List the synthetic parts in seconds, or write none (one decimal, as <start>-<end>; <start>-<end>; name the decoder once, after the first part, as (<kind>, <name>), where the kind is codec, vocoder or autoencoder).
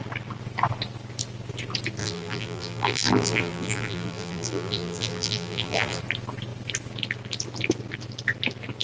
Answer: 2.0-6.0 (vocoder, BigVGAN v2)